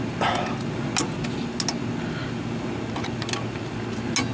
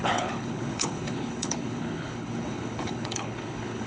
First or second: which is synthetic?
second